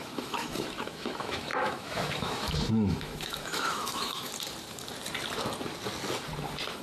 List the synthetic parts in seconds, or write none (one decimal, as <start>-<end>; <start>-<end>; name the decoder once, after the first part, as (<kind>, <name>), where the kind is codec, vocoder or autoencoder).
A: 0.0-4.3 (autoencoder, DAC-VAE)